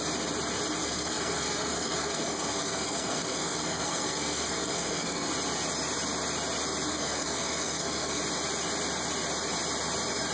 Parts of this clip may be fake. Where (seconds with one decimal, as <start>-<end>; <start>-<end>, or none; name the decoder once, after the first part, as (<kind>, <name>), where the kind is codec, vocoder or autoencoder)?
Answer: 0.8-5.3 (codec, SNAC); 6.9-8.2